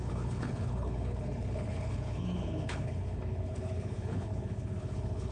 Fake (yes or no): yes